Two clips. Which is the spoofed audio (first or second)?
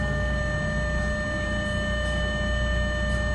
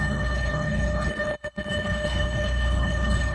second